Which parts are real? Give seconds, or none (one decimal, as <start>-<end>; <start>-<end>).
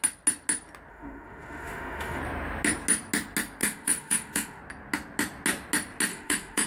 0.0-0.9; 2.2-3.6; 4.6-6.1